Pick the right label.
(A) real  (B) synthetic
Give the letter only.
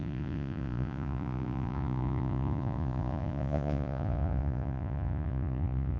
B